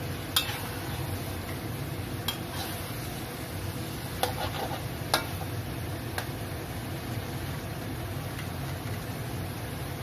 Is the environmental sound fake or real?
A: real